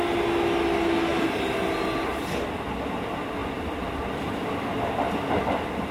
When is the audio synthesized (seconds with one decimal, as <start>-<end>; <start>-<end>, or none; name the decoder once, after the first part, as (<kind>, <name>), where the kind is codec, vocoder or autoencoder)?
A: none